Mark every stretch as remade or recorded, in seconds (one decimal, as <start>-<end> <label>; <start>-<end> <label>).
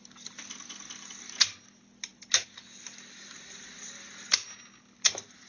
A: 0.0-5.5 recorded